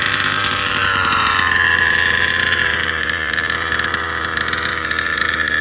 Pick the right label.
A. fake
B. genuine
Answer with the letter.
A